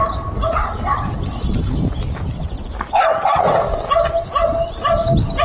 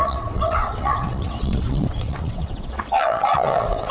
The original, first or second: first